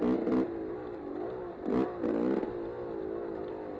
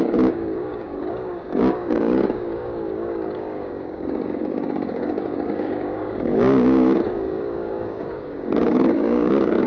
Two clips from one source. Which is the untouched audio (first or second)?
first